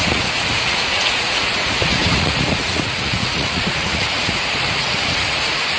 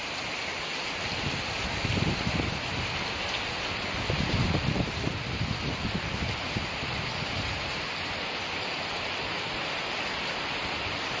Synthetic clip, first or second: first